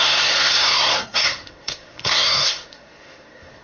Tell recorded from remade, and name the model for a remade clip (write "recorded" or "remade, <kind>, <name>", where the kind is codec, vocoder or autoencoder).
remade, codec, SNAC